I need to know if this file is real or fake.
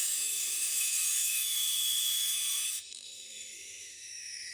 fake